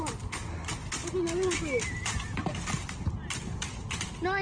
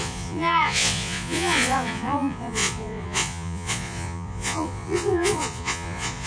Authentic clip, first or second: first